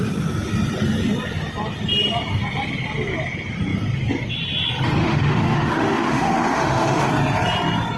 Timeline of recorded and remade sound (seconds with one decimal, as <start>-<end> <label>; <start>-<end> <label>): 0.0-5.0 recorded; 5.0-7.1 remade; 7.1-8.0 recorded